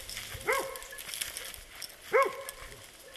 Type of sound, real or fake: real